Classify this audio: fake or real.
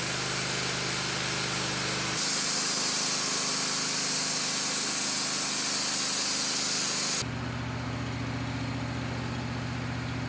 real